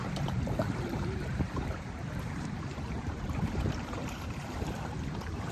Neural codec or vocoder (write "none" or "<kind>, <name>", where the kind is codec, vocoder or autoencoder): vocoder, BigVGAN v2